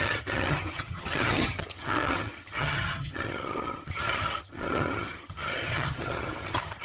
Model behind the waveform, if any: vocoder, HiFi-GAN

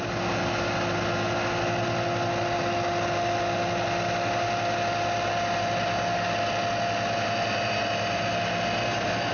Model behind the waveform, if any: none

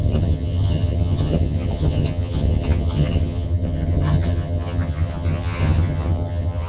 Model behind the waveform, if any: vocoder, HiFi-GAN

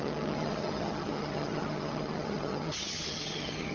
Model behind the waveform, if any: vocoder, HiFi-GAN